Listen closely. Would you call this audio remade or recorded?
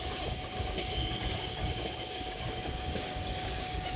remade